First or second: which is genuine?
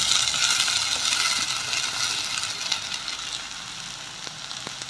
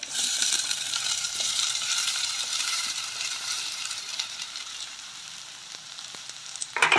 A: first